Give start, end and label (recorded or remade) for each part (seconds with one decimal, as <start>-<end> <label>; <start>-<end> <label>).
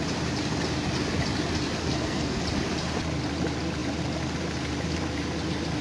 0.0-1.8 recorded; 1.8-2.4 remade; 2.4-5.8 recorded